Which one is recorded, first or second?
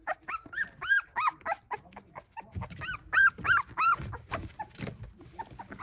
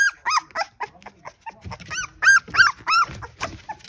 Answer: second